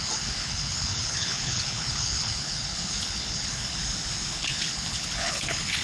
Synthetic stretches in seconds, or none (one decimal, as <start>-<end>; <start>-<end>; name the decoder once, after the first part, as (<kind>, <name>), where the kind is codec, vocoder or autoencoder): 0.0-3.8 (codec, HILCodec); 4.3-5.8